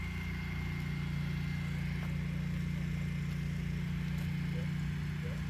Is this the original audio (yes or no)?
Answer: yes